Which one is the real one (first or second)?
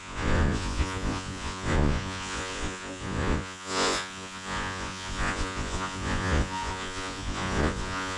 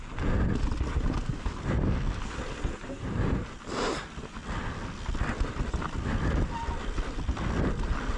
second